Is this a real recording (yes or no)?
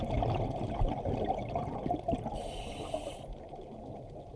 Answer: yes